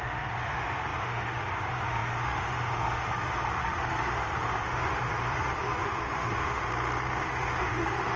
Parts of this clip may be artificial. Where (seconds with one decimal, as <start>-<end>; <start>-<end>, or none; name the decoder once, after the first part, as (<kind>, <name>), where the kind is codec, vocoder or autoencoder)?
0.0-6.7 (autoencoder, DAC-VAE); 7.2-8.2